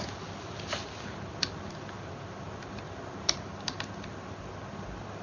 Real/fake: real